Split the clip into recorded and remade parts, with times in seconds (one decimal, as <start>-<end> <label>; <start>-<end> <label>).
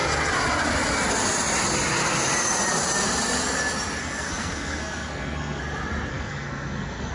0.0-4.0 recorded; 4.0-5.6 remade; 5.6-6.1 recorded; 6.1-7.1 remade